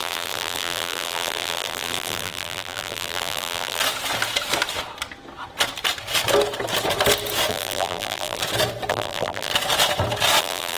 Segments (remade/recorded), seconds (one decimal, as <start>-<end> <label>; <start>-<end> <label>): 0.0-3.8 remade; 3.8-7.5 recorded; 7.5-8.4 remade; 8.4-8.9 recorded; 8.9-9.5 remade; 9.5-10.4 recorded; 10.4-10.8 remade